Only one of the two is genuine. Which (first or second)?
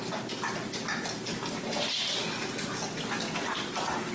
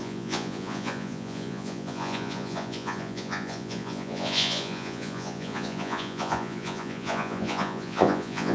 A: first